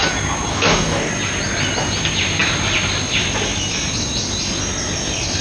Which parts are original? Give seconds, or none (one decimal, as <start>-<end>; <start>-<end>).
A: 0.0-0.5; 1.1-5.4